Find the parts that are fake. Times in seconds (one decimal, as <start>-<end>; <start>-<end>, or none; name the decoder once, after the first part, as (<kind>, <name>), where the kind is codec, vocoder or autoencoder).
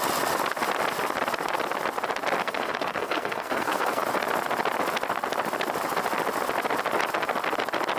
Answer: 2.4-4.0 (codec, SNAC)